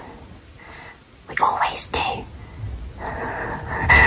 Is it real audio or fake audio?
real